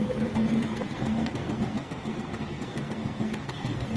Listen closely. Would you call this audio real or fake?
fake